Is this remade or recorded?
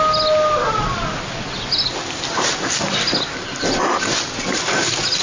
recorded